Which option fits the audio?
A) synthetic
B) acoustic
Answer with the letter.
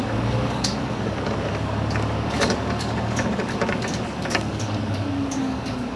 A